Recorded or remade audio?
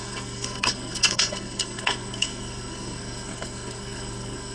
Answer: remade